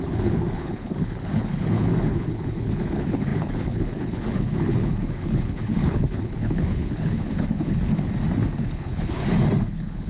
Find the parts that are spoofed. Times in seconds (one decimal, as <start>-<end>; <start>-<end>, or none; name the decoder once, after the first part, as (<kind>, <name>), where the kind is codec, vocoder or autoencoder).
0.0-7.9 (codec, HILCodec); 8.6-9.2; 9.7-10.1